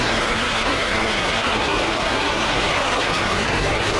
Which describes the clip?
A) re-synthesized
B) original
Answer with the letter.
A